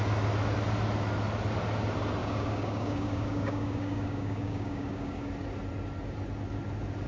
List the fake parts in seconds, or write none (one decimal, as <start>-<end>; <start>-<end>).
2.2-5.3